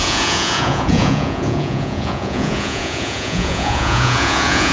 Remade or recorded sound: remade